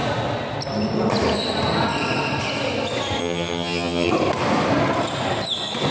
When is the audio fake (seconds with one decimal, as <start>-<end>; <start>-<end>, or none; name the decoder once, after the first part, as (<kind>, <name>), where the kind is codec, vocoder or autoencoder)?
3.2-4.1 (vocoder, HiFi-GAN)